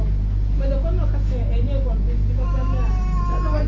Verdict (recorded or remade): recorded